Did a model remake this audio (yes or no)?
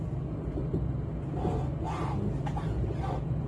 no